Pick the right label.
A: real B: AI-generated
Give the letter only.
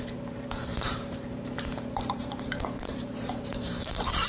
B